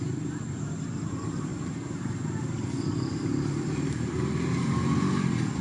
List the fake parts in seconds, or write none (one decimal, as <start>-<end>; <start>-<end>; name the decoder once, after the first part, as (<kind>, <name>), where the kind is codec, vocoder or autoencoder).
none